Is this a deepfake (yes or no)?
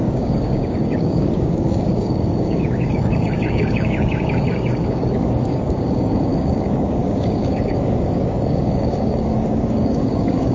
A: yes